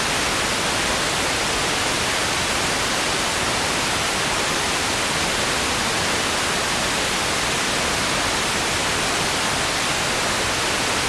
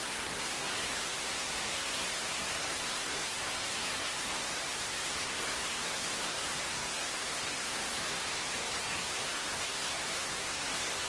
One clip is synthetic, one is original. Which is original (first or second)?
first